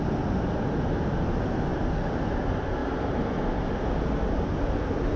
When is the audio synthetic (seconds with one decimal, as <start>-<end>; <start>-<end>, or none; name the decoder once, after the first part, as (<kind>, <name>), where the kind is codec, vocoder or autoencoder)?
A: none